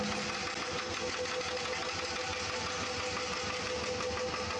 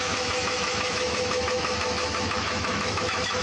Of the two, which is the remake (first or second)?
second